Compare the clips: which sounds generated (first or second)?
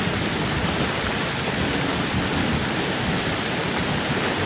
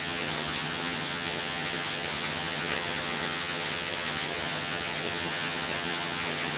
second